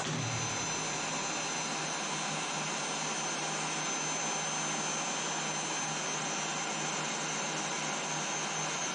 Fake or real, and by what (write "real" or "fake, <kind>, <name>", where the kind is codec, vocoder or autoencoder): real